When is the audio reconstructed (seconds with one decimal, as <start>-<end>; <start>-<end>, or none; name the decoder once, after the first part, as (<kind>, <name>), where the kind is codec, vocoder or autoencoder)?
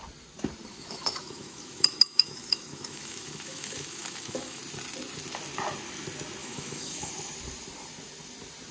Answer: 0.7-4.6 (autoencoder, DAC-VAE); 6.4-7.1